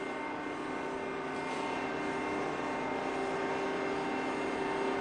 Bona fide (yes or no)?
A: yes